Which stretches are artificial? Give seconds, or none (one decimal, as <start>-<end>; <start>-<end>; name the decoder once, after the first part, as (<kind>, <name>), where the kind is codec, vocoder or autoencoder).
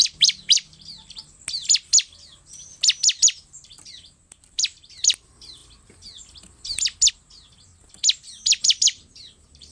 0.0-1.2 (vocoder, BigVGAN v2); 3.4-5.6; 7.1-7.7; 8.8-9.7